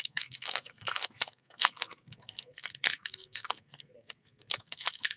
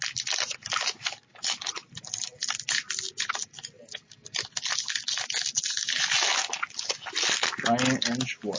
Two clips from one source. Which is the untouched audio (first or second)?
second